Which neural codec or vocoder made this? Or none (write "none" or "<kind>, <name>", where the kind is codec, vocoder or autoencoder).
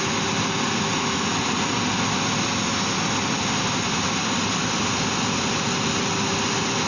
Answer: none